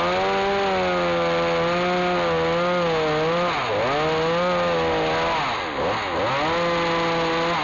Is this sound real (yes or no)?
yes